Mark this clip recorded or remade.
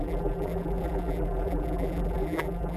remade